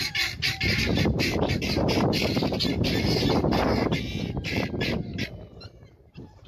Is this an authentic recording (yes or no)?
no